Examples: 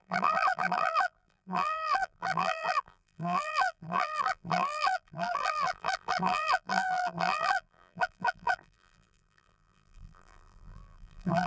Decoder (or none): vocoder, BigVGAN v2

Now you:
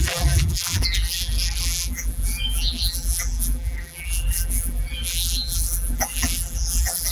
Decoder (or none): vocoder, BigVGAN v2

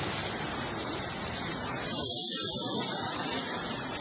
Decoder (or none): none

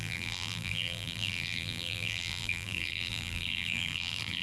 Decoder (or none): vocoder, BigVGAN v2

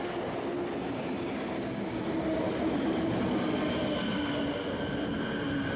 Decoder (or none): none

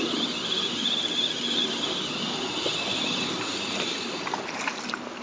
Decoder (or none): none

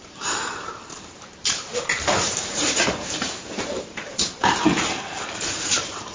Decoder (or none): vocoder, BigVGAN v2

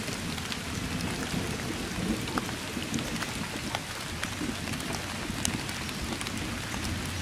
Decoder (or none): none